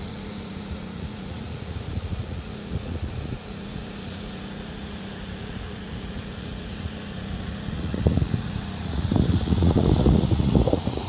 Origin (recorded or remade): remade